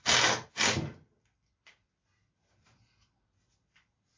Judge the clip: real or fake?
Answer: real